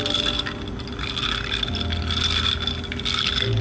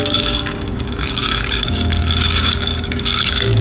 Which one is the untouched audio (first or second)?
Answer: first